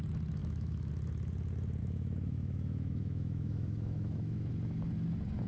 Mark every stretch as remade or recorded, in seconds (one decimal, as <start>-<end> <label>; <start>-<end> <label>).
0.0-0.4 recorded; 0.4-0.9 remade; 0.9-1.8 recorded; 1.8-4.5 remade; 4.5-5.5 recorded